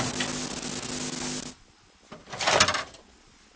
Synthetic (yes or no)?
no